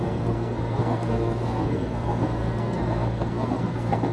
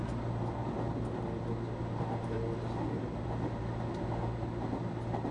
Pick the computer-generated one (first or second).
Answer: first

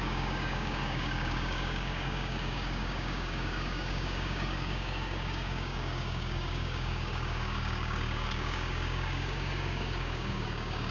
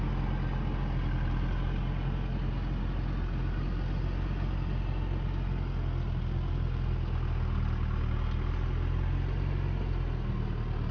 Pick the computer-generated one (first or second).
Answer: first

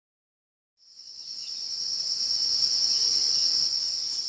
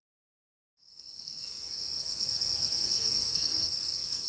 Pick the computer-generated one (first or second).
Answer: second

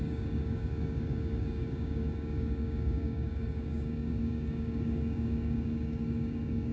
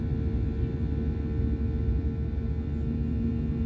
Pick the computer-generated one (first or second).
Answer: first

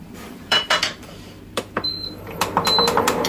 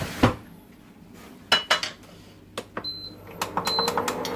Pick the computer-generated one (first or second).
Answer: first